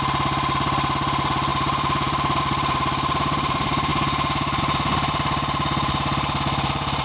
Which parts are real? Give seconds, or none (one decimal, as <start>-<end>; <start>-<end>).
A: 3.9-4.6